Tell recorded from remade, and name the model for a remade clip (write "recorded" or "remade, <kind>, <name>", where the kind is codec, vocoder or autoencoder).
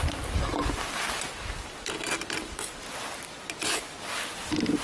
recorded